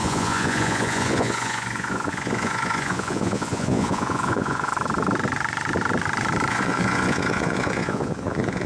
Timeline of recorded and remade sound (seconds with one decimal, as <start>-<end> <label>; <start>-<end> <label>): 0.0-4.7 remade; 4.7-6.5 recorded; 6.5-8.7 remade